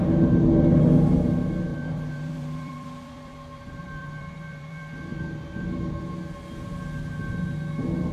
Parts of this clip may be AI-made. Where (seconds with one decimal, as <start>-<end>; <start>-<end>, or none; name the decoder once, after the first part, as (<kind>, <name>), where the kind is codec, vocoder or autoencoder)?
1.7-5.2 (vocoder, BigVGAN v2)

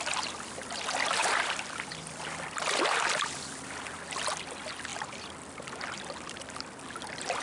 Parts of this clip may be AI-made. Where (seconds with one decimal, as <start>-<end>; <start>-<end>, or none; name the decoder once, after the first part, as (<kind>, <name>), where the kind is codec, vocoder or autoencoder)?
1.2-1.9 (vocoder, BigVGAN v2)

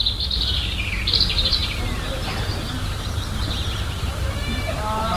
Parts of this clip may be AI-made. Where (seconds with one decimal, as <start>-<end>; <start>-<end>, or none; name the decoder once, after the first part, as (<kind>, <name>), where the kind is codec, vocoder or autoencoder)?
0.0-5.2 (vocoder, BigVGAN v2)

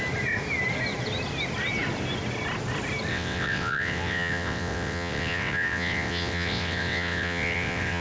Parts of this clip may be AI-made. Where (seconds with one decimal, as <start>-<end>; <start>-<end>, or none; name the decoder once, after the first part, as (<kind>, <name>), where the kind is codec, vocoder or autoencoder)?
3.1-8.0 (vocoder, WaveNeXt)

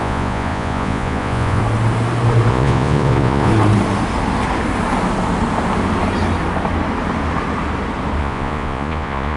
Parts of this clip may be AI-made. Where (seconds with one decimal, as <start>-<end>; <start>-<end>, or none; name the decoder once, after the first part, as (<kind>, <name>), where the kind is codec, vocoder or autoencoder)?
0.0-1.6 (vocoder, Vocos); 2.5-3.5; 8.2-9.4